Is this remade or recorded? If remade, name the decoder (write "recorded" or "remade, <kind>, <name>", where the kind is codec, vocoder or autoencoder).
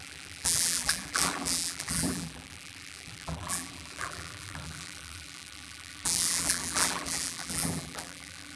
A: remade, vocoder, BigVGAN v2